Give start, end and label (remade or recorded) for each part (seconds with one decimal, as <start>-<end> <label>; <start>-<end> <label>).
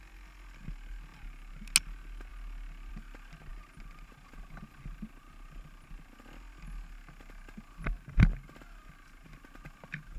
0.0-10.2 recorded